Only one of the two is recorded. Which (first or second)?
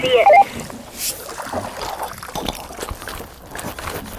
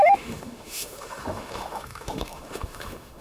first